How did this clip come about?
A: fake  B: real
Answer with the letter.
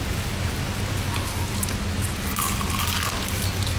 B